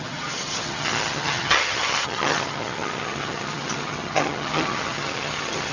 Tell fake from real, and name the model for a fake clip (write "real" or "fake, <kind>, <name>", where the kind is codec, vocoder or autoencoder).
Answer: fake, vocoder, HiFi-GAN